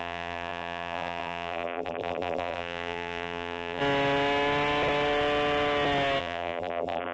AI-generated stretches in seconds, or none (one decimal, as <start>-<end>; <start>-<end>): 0.0-3.8; 6.2-7.1